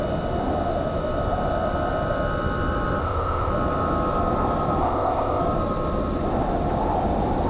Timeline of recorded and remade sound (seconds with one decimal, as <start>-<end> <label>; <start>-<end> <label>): 0.0-3.0 recorded; 3.0-3.5 remade; 3.5-4.8 recorded; 4.8-5.4 remade; 5.4-7.5 recorded